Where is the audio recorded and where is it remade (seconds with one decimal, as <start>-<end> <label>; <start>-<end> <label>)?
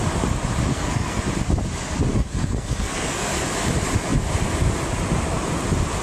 0.0-0.7 recorded; 0.7-1.2 remade; 1.2-2.1 recorded; 2.1-3.3 remade; 3.3-6.0 recorded